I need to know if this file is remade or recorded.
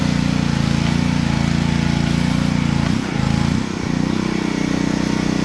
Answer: recorded